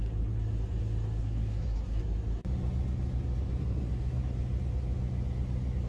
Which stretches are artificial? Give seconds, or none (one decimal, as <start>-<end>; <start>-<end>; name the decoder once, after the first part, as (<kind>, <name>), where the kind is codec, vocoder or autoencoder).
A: 1.2-2.0 (codec, SNAC); 3.6-4.2